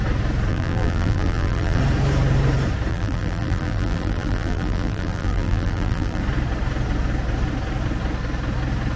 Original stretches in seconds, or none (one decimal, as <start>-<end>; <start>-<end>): 0.0-0.5; 1.8-2.9; 6.2-9.0